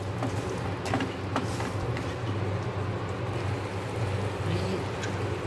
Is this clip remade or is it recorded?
recorded